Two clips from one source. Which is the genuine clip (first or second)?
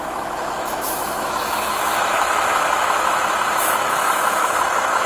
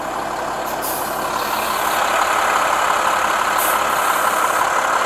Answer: second